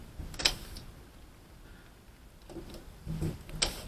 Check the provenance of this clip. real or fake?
real